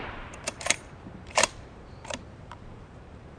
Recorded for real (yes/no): no